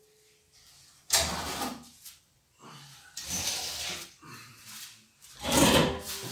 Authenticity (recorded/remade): remade